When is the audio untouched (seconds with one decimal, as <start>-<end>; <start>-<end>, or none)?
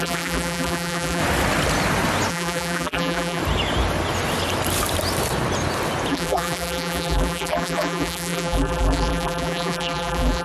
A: 1.2-2.3; 3.4-6.1